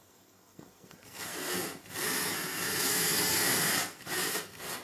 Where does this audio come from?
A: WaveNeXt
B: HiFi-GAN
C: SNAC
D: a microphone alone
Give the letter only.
C